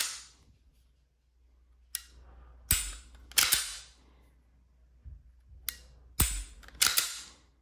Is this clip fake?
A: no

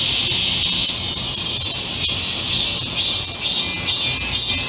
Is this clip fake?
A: no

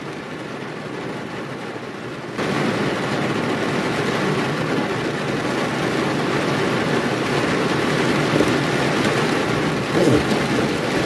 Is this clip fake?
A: no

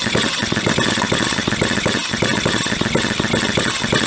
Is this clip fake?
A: no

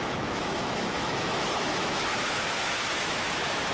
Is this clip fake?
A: yes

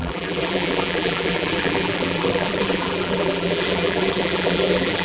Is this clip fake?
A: yes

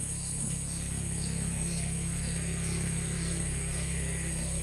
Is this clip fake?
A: yes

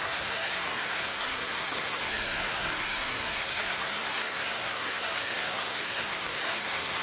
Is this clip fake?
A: yes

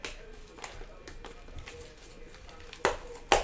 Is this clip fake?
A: no